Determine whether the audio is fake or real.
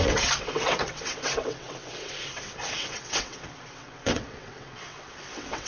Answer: fake